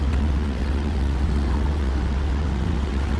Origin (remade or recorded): remade